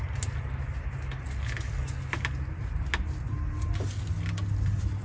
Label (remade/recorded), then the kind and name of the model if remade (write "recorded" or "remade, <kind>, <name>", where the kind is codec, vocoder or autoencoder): recorded